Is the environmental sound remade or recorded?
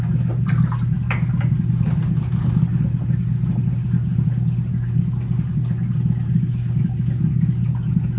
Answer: recorded